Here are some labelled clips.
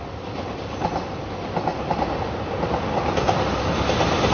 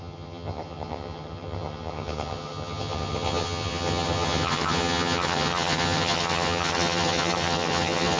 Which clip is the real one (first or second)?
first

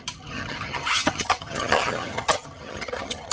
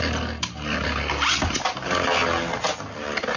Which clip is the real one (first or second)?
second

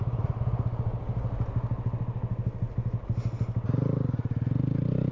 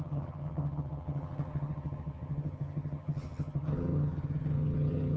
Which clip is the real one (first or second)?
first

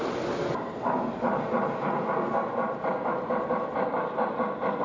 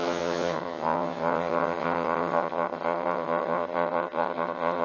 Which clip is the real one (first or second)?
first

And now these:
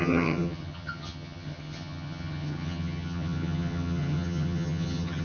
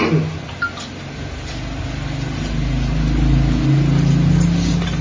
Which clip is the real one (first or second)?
second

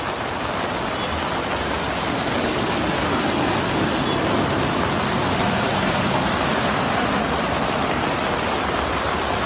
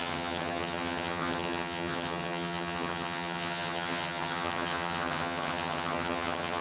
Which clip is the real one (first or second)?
first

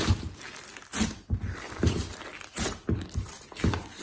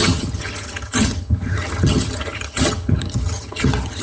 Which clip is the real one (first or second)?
first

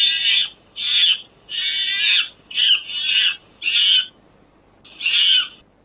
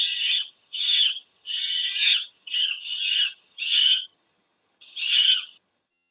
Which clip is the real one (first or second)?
first